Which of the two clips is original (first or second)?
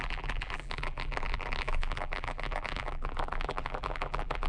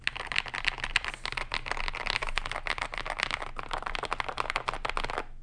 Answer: second